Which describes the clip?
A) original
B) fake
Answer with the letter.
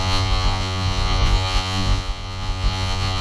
B